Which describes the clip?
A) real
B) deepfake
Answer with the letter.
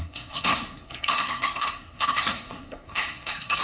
B